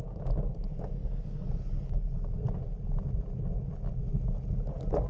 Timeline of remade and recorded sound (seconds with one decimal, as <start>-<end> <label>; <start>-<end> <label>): 0.0-5.1 recorded